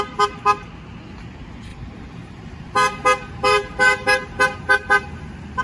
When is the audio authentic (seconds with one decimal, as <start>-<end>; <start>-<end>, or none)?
0.0-1.7; 5.1-5.6